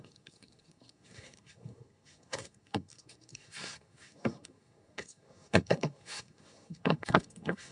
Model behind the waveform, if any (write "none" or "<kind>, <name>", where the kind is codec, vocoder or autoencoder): codec, SNAC